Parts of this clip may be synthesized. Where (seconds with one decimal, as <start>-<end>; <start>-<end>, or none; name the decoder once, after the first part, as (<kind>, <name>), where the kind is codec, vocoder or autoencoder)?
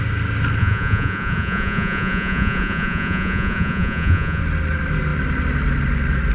0.6-4.4 (vocoder, Vocos)